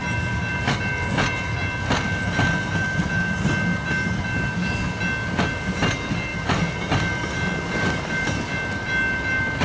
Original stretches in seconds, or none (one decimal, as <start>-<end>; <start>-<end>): 0.0-9.6